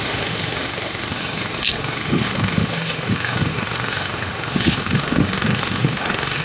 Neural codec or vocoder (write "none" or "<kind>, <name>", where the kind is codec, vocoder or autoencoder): autoencoder, DAC-VAE